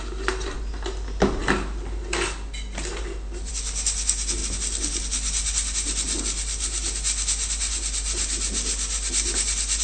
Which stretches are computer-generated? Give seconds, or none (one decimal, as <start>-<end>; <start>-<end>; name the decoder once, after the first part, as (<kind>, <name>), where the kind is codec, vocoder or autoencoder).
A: none